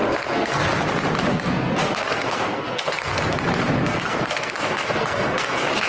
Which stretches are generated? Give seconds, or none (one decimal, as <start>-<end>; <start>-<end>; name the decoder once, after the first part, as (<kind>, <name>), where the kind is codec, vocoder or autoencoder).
0.0-0.6 (codec, SNAC); 1.3-3.2; 3.8-5.9